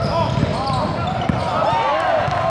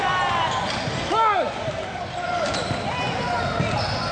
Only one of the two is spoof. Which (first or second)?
first